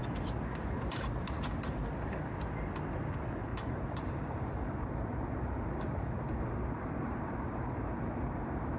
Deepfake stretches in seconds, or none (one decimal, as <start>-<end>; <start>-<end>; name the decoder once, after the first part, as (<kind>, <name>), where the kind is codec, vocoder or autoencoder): 3.5-8.8 (vocoder, BigVGAN v2)